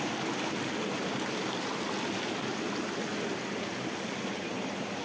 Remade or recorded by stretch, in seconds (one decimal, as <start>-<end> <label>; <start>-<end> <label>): 0.0-5.0 recorded